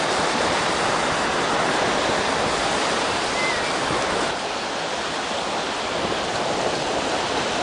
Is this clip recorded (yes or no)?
yes